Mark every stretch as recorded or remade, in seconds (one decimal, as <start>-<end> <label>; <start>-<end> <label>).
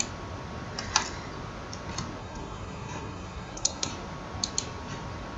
0.0-2.2 recorded; 2.2-3.9 remade; 3.9-5.4 recorded